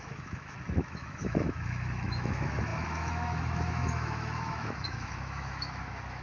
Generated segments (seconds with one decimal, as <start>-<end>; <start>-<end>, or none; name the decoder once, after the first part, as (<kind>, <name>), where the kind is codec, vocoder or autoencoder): 0.0-6.2 (autoencoder, DAC-VAE)